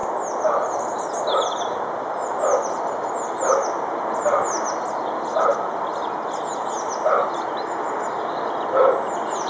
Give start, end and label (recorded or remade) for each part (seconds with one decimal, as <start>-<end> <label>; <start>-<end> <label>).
0.0-9.5 recorded